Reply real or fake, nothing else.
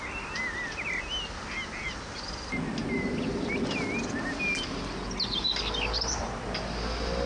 real